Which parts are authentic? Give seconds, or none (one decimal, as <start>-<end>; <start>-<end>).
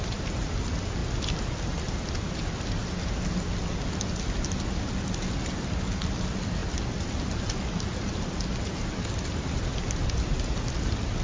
0.0-11.2